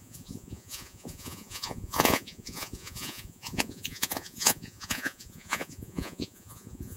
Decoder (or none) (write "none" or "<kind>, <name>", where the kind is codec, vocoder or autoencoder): vocoder, Vocos